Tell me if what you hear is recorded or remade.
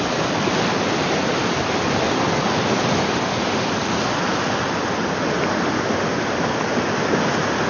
recorded